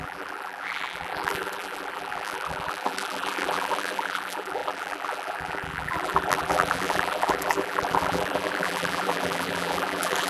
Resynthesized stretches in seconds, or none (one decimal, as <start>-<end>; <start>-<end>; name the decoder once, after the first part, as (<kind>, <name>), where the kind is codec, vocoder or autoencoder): 0.0-10.3 (vocoder, BigVGAN v2)